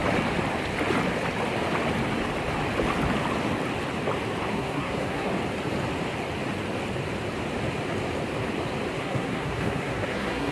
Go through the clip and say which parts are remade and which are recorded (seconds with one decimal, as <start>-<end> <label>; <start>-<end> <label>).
0.0-4.5 recorded; 4.5-5.3 remade; 5.3-9.0 recorded; 9.0-10.5 remade